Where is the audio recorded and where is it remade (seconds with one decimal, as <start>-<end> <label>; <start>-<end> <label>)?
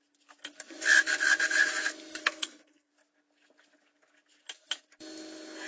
0.0-2.2 recorded; 2.2-2.9 remade; 2.9-5.7 recorded